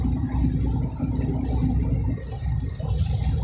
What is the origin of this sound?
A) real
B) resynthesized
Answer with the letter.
A